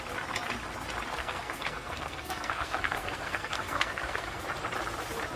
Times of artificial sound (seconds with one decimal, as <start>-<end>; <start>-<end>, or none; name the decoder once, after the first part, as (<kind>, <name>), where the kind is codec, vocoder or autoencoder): 1.2-4.4 (codec, SNAC)